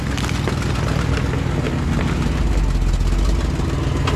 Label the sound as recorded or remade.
recorded